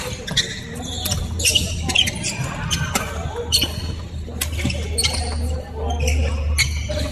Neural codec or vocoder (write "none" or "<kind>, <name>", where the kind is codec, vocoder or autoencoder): none